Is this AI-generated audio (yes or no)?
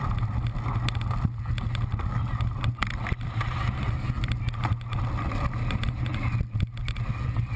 no